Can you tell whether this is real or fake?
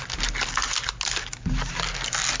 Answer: real